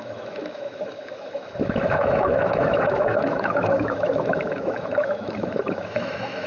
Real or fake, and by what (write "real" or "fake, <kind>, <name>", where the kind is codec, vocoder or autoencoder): fake, autoencoder, DAC-VAE